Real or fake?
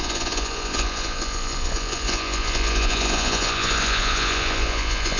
fake